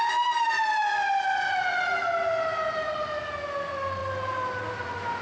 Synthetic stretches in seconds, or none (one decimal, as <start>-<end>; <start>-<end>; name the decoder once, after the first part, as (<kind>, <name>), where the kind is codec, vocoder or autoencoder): none